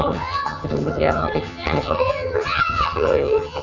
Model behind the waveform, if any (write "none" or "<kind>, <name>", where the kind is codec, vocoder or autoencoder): vocoder, HiFi-GAN